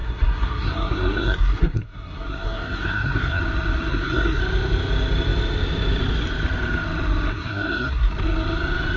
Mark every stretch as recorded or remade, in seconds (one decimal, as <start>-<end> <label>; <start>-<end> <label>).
0.0-3.4 remade; 3.4-3.9 recorded; 3.9-4.4 remade; 4.4-7.3 recorded; 7.3-8.1 remade; 8.1-9.0 recorded